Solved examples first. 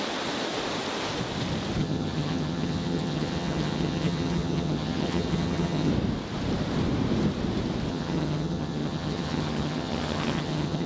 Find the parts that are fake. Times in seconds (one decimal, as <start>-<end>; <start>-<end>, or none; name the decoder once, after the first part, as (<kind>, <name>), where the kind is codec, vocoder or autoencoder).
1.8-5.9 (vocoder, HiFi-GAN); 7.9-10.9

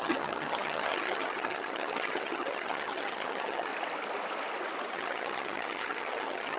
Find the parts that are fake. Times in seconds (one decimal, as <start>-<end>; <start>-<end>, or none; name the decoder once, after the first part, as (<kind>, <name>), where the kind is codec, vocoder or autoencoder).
0.0-3.7 (vocoder, HiFi-GAN); 4.9-6.6

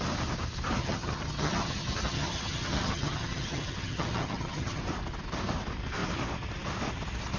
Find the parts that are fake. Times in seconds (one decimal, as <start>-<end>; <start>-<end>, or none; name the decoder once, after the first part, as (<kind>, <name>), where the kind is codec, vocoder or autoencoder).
0.8-4.8 (vocoder, HiFi-GAN)